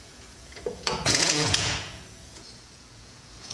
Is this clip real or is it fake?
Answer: fake